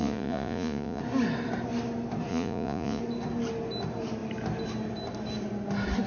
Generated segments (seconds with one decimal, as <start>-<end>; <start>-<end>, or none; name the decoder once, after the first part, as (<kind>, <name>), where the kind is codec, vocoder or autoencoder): 0.0-1.0 (vocoder, Vocos); 2.3-3.0